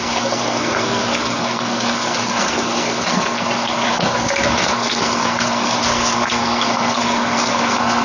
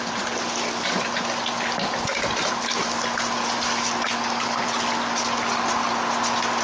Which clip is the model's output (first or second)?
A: first